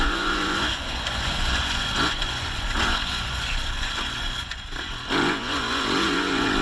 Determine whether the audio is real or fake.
fake